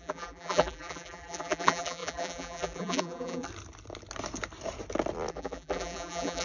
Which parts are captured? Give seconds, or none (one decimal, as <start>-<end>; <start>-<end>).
3.5-5.3